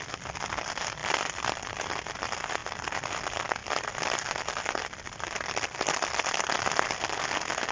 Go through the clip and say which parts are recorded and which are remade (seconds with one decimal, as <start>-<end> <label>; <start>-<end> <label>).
0.0-1.0 recorded; 1.0-1.8 remade; 1.8-3.6 recorded; 3.6-6.6 remade; 6.6-7.7 recorded